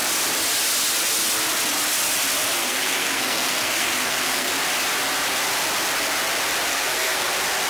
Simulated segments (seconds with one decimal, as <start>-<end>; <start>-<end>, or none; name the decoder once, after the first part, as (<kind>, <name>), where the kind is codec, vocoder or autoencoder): 2.6-4.5 (codec, SNAC); 6.7-7.3